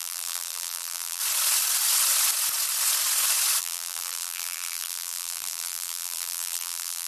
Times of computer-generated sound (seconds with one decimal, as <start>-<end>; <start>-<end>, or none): 0.0-1.2; 3.6-7.1

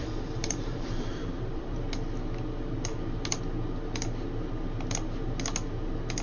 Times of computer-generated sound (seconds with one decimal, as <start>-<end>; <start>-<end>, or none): 0.4-1.8; 2.9-3.4